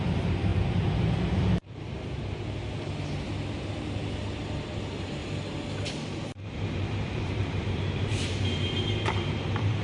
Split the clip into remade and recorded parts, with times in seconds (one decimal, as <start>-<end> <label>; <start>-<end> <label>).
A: 0.0-0.5 remade; 0.5-4.4 recorded; 4.4-5.2 remade; 5.2-5.9 recorded; 5.9-9.8 remade